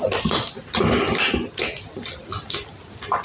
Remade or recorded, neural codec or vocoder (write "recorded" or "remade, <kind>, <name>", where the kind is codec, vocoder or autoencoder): recorded